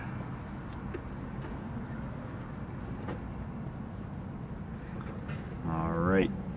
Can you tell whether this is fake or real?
real